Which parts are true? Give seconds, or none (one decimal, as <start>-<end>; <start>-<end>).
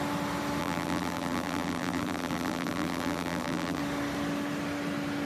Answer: 0.0-0.6; 3.8-5.3